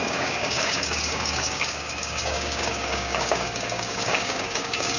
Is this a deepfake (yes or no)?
yes